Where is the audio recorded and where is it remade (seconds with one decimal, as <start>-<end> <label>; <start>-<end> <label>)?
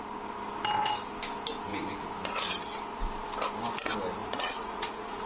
0.0-4.2 recorded; 4.2-5.3 remade